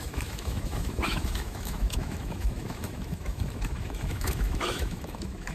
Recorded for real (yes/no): no